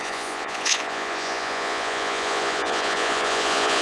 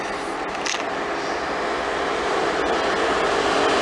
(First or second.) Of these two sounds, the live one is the second